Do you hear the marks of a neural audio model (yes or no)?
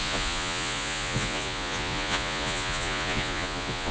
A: yes